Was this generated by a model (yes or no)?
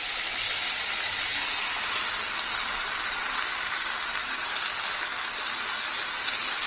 no